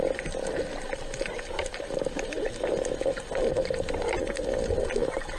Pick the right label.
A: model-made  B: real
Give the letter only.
B